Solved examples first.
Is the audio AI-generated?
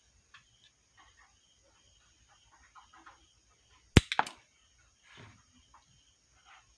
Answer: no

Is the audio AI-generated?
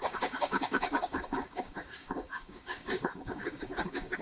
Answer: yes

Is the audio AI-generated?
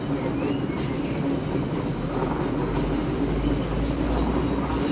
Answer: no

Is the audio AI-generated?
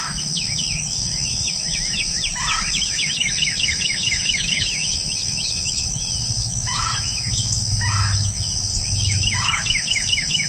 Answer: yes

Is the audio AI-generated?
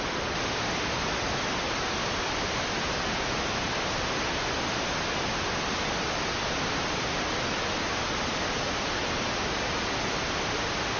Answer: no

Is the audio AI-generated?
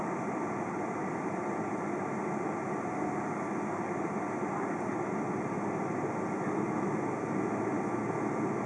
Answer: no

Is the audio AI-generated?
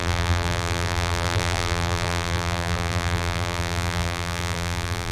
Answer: yes